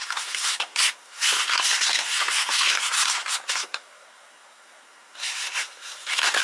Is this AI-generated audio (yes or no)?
yes